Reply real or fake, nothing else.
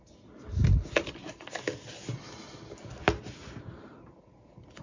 real